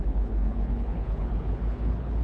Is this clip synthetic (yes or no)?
yes